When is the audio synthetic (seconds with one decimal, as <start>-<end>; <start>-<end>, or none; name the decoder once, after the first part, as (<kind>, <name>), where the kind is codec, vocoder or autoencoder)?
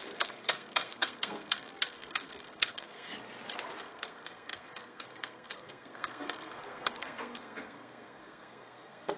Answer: 0.0-3.1 (codec, SNAC); 3.8-9.2